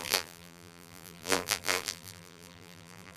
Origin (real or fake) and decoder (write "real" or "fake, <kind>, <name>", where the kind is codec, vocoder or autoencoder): fake, vocoder, BigVGAN v2